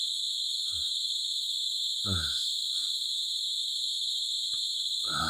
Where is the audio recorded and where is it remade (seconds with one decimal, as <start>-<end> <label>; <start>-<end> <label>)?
0.0-2.8 remade; 2.8-3.4 recorded; 3.4-5.3 remade